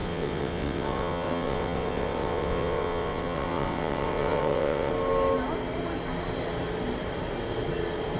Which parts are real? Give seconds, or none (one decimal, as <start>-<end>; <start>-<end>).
4.9-8.2